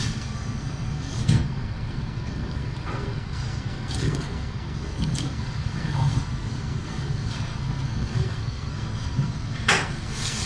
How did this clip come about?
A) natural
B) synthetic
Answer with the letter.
B